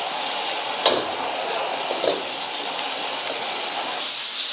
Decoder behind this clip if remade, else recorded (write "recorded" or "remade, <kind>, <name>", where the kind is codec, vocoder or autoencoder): recorded